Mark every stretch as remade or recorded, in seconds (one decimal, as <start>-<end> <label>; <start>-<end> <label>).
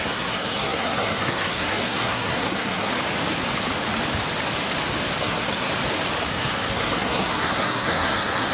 0.0-2.9 remade; 2.9-5.2 recorded; 5.2-5.7 remade; 5.7-6.3 recorded; 6.3-8.5 remade